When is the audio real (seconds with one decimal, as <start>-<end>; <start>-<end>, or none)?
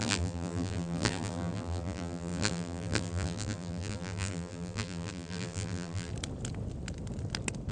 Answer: 6.1-7.7